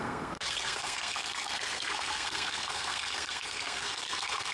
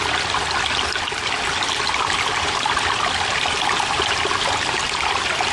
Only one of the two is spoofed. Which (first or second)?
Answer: first